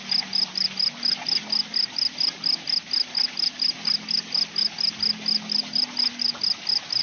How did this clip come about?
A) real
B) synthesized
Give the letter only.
A